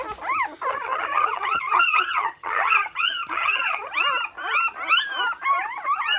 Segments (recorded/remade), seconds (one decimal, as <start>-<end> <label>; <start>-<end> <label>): 0.0-0.7 recorded; 0.7-3.9 remade; 3.9-6.2 recorded